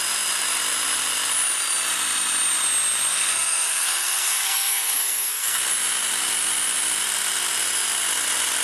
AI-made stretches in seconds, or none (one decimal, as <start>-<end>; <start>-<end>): 3.1-5.6